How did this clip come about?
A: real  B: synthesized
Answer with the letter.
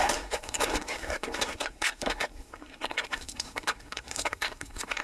B